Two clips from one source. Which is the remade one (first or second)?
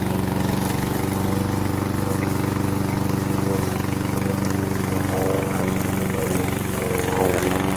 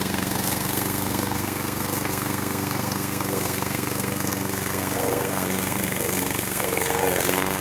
second